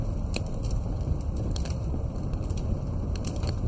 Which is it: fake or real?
real